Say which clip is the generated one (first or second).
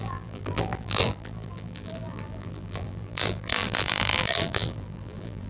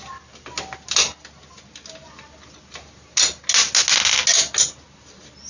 first